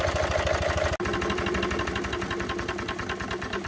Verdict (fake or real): real